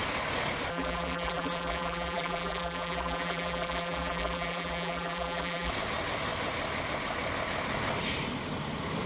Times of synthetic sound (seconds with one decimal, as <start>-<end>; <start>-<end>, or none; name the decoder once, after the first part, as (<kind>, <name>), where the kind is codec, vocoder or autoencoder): 0.7-5.7 (vocoder, BigVGAN v2)